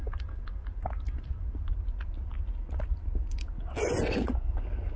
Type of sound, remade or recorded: recorded